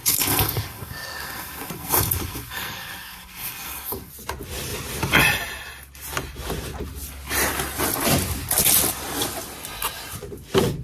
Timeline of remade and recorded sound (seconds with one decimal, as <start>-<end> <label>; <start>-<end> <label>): 0.0-4.1 remade; 4.1-10.8 recorded